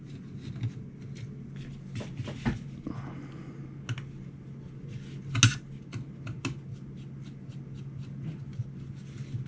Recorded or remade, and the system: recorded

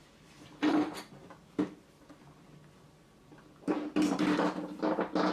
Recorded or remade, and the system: recorded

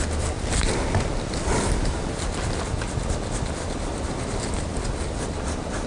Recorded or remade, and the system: recorded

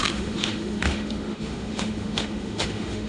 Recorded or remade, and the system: remade, autoencoder, DAC-VAE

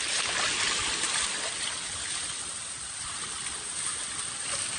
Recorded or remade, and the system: recorded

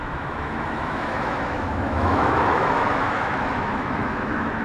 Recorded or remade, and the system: remade, autoencoder, DAC-VAE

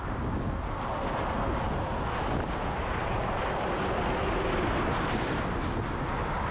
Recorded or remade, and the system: recorded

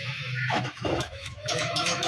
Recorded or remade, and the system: remade, autoencoder, DAC-VAE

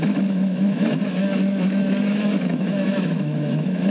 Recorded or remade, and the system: remade, autoencoder, DAC-VAE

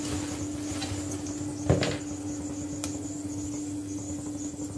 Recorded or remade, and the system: recorded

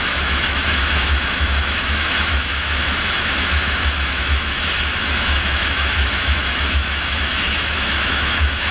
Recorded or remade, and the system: remade, autoencoder, DAC-VAE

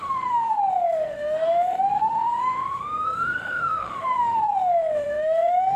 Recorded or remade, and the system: remade, autoencoder, DAC-VAE